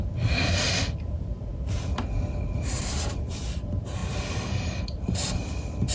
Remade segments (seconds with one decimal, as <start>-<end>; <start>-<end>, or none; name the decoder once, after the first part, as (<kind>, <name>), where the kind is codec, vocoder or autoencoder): 0.0-1.5 (vocoder, BigVGAN v2); 2.8-5.9